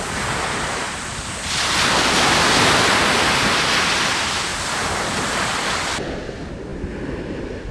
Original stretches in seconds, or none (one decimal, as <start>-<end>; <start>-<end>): 0.0-7.7